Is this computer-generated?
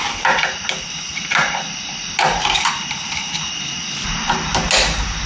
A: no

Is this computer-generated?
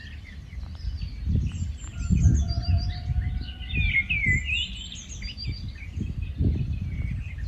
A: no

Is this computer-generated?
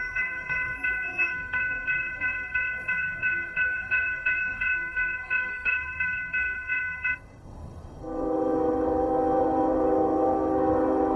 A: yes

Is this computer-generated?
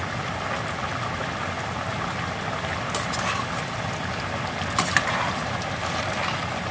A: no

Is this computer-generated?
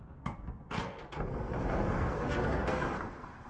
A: yes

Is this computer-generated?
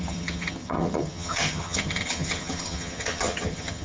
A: yes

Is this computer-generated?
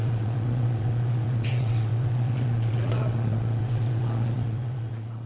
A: yes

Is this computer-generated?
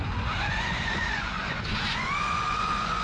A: yes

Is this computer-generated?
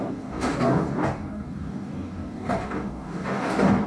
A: yes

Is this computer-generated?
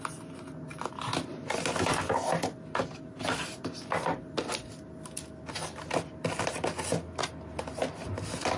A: no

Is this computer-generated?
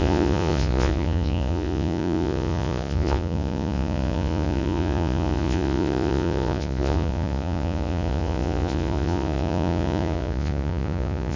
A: yes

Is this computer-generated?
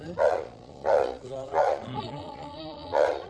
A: yes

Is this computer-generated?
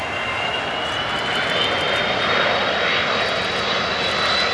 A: no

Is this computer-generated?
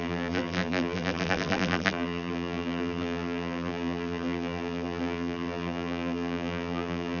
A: yes